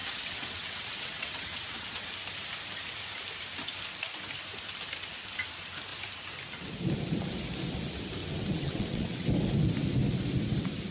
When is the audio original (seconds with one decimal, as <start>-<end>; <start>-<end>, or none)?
2.1-8.2; 9.3-10.9